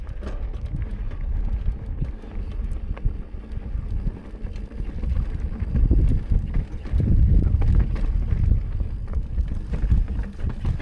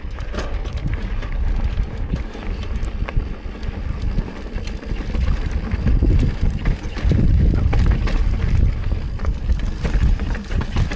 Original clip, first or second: first